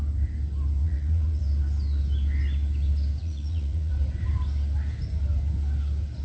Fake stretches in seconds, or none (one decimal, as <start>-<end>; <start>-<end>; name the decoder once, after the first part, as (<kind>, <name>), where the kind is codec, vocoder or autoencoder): 0.8-1.4 (vocoder, Vocos); 3.2-3.9